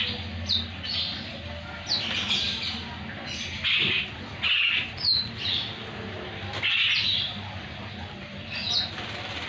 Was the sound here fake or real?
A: real